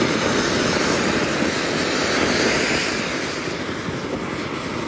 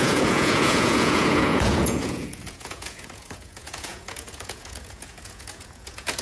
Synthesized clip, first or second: second